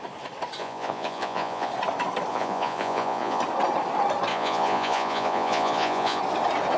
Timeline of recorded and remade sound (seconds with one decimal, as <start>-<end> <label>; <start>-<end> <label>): 0.0-0.6 recorded; 0.6-1.7 remade; 1.7-2.3 recorded; 2.3-3.4 remade; 3.4-4.3 recorded; 4.3-6.2 remade; 6.2-6.8 recorded